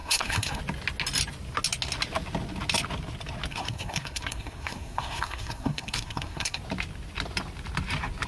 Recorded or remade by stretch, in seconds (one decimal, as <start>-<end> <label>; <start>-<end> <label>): 0.0-0.6 remade; 0.6-3.5 recorded; 3.5-6.6 remade; 6.6-8.3 recorded